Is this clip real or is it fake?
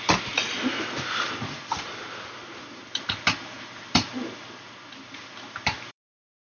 fake